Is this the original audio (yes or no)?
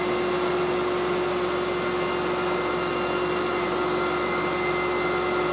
yes